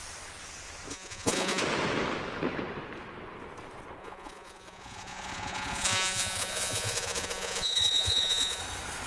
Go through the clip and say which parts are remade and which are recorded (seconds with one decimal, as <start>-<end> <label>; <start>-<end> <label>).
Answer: 0.0-0.9 recorded; 0.9-1.6 remade; 1.6-4.0 recorded; 4.0-8.6 remade; 8.6-9.1 recorded